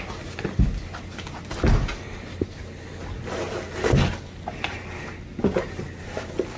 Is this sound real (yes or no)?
yes